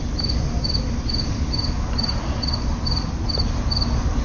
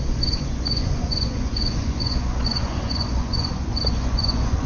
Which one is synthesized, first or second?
second